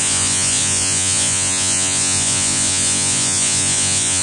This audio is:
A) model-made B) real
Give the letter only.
A